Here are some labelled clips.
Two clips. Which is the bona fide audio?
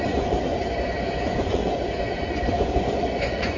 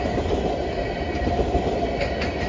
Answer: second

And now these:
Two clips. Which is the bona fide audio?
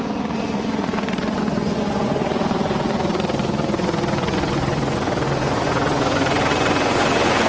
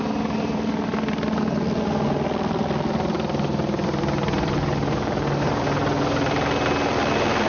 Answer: second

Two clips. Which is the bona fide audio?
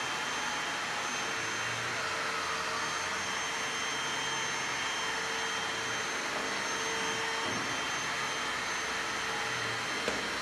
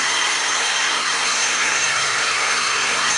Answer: first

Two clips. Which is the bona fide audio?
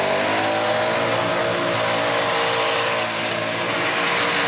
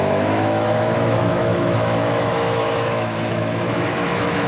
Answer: first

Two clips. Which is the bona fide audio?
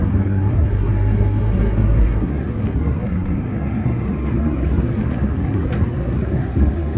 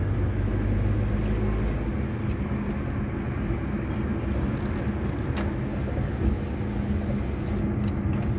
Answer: second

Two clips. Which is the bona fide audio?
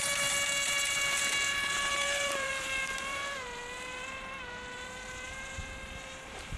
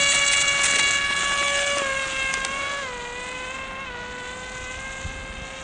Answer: second